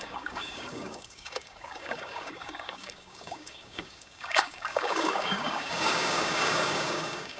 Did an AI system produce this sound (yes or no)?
yes